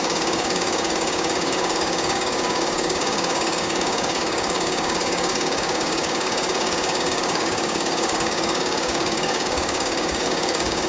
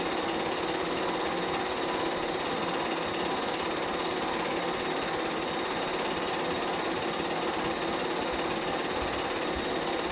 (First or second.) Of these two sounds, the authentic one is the second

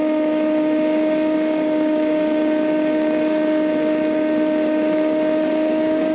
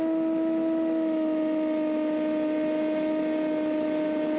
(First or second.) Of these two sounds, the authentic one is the second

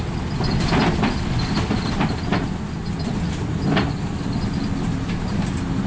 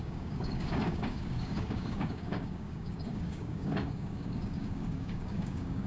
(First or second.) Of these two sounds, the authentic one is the first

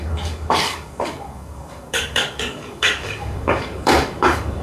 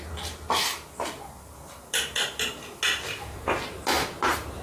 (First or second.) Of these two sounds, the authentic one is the second